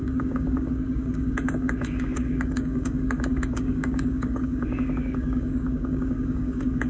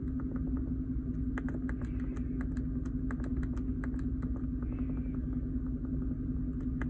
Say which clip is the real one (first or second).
second